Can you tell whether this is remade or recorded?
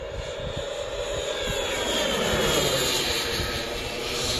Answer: recorded